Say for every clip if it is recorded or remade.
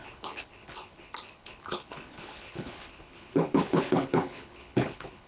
remade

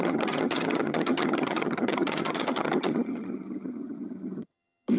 remade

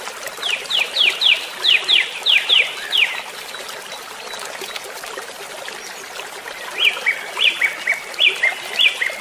recorded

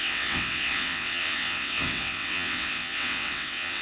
remade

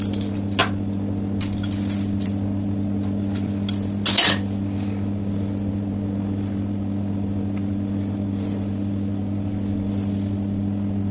recorded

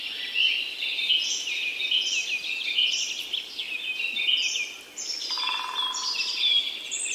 recorded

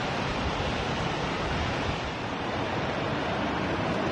remade